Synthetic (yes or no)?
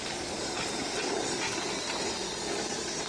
no